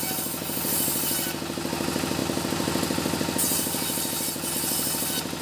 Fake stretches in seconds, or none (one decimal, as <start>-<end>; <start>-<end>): none